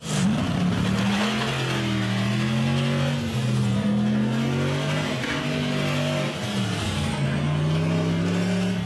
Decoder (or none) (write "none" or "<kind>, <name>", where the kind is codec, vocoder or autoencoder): none